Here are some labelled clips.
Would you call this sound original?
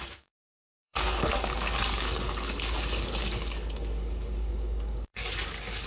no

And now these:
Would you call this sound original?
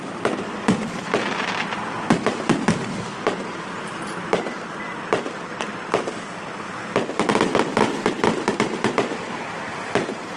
no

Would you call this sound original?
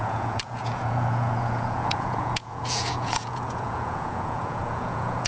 no